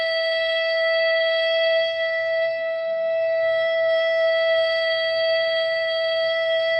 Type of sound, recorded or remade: remade